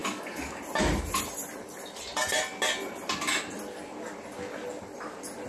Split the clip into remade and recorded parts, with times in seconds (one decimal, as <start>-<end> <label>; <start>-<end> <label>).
0.0-0.6 remade; 0.6-5.5 recorded